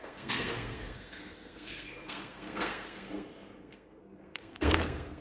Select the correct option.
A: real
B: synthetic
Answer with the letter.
B